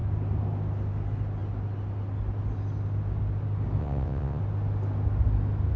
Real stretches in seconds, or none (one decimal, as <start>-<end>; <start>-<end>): 0.0-3.8; 4.4-5.8